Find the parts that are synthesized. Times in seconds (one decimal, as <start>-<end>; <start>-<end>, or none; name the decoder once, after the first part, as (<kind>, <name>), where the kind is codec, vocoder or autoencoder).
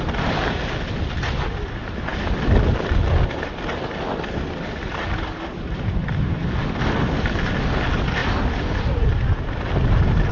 none